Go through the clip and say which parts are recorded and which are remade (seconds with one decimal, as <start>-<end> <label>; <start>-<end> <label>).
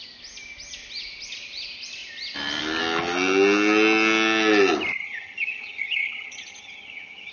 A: 0.0-5.0 recorded; 5.0-7.3 remade